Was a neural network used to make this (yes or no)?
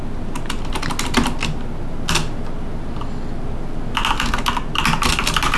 no